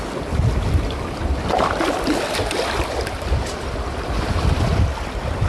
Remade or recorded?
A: remade